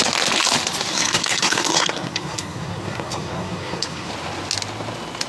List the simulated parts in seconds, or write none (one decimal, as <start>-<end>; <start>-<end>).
0.9-4.1